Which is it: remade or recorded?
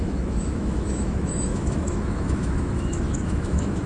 remade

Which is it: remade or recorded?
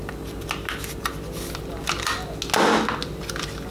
recorded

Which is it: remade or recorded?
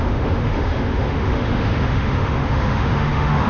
remade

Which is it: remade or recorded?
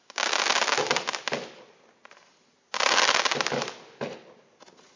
recorded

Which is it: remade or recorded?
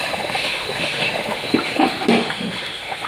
remade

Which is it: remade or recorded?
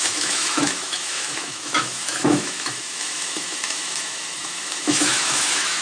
remade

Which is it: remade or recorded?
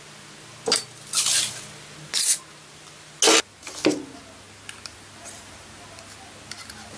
recorded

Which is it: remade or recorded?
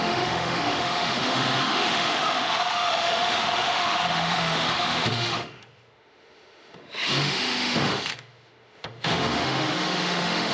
remade